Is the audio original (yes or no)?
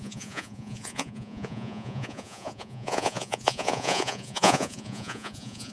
no